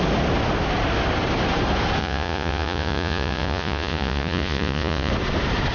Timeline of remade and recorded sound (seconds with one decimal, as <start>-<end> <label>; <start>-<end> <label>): 0.0-2.0 recorded; 2.0-5.1 remade; 5.1-5.7 recorded